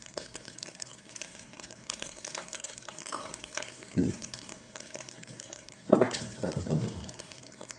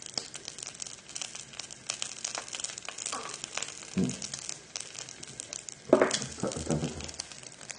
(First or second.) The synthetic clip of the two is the first